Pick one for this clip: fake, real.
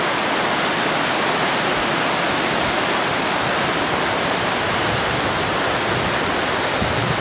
real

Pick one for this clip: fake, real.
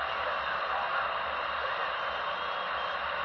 real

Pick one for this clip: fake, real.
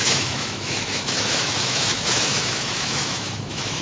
fake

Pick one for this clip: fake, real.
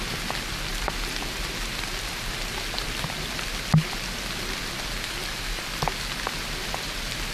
real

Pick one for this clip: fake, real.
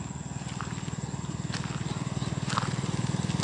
real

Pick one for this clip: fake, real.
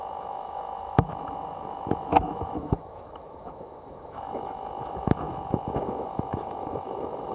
fake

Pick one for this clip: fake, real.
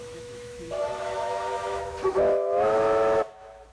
fake